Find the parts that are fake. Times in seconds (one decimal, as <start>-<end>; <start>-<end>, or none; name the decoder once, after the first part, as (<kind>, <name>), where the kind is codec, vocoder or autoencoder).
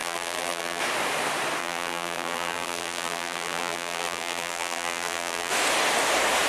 0.0-0.8 (vocoder, BigVGAN v2); 1.6-5.5